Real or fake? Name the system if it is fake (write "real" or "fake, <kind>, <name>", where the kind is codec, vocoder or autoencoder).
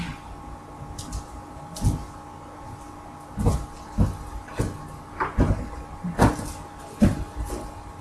real